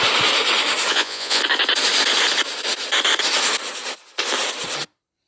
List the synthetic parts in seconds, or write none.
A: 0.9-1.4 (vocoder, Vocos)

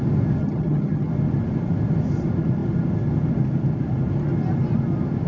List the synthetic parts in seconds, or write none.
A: 0.4-1.1 (vocoder, HiFi-GAN)